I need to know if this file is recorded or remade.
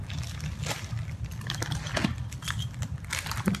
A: recorded